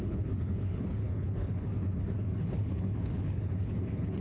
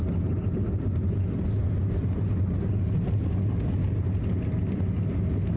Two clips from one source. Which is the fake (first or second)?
first